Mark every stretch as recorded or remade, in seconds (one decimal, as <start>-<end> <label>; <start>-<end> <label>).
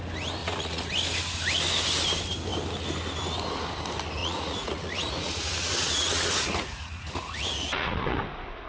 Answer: 0.0-0.4 recorded; 0.4-0.9 remade; 0.9-4.2 recorded; 4.2-8.2 remade; 8.2-8.7 recorded